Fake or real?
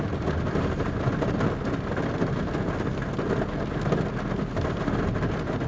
real